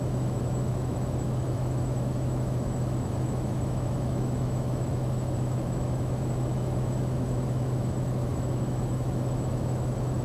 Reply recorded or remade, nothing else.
remade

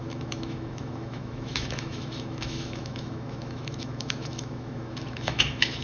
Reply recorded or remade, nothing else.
remade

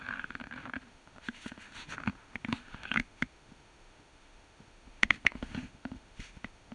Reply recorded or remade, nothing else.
remade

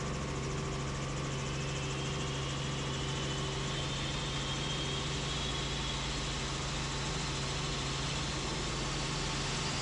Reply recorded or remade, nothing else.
recorded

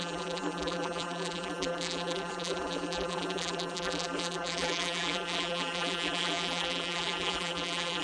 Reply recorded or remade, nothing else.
remade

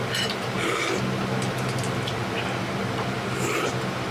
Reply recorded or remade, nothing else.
recorded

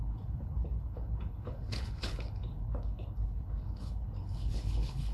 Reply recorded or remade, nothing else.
remade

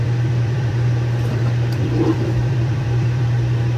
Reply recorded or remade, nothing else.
remade